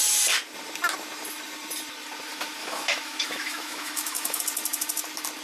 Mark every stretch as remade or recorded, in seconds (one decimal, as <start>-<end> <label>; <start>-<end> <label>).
0.0-2.6 recorded; 2.6-4.4 remade; 4.4-5.4 recorded